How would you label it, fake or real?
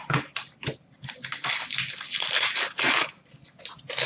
real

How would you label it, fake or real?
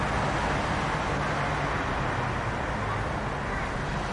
real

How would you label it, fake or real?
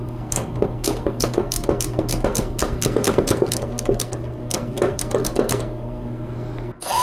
fake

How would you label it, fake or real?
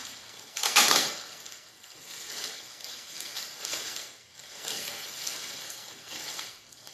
fake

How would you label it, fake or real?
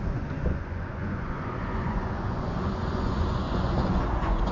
fake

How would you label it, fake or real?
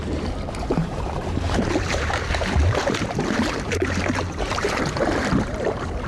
fake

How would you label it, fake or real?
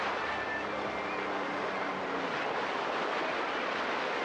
real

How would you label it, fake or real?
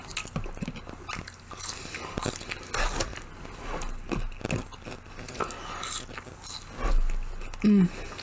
real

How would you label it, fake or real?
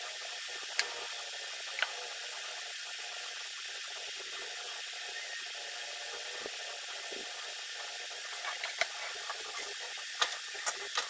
real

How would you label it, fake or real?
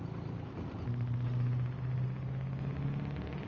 real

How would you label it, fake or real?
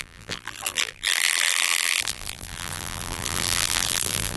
fake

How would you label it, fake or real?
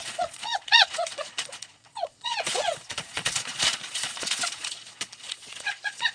fake